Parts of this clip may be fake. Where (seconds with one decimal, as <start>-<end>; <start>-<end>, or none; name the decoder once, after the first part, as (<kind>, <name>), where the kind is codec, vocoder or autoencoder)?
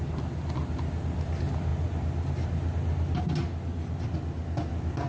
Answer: none